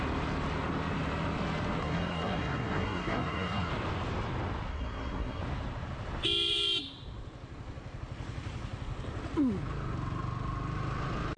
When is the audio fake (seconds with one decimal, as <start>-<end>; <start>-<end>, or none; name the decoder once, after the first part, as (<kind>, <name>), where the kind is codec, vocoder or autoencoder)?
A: 1.8-3.7 (codec, SNAC); 4.7-5.4